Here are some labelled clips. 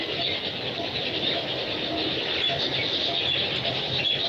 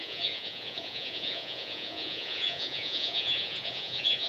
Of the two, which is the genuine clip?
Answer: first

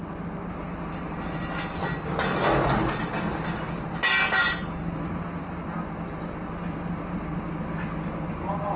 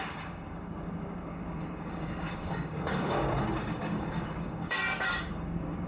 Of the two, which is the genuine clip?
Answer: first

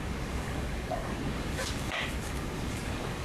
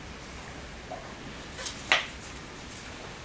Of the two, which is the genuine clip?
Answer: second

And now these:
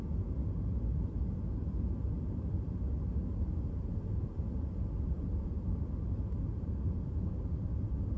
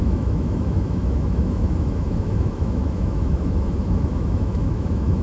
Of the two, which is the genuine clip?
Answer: first